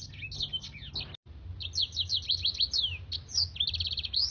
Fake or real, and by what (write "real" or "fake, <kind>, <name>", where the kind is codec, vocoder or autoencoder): real